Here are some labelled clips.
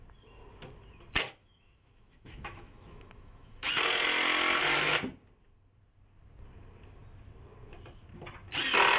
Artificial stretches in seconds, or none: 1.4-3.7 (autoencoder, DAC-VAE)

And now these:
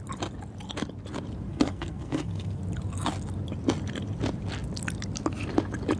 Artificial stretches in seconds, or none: 1.5-2.6 (codec, SNAC)

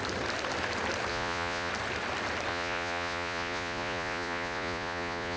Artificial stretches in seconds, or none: 1.1-1.7 (vocoder, Vocos); 2.5-5.4